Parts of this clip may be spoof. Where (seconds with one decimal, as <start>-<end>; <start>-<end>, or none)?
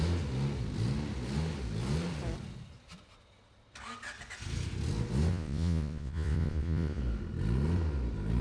5.3-7.0